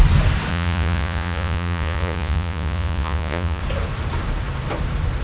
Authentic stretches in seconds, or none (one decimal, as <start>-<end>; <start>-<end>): 0.0-0.5; 3.6-5.2